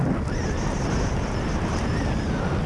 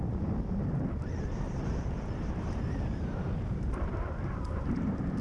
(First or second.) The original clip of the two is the first